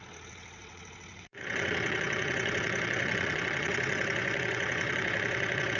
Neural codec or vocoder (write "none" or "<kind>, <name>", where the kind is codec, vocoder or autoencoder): vocoder, WaveNeXt